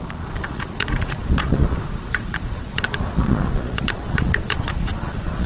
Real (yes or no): no